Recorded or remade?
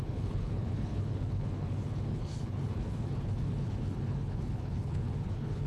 remade